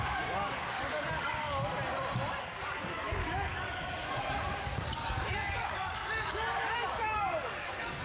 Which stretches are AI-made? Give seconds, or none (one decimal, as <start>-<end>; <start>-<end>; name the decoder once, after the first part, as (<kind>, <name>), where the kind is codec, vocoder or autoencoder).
0.0-1.6 (codec, DAC); 2.4-8.0